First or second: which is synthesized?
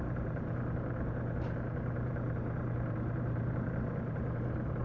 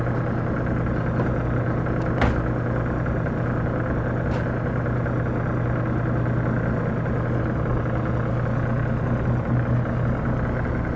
first